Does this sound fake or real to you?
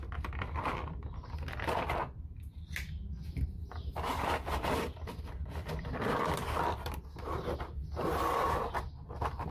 real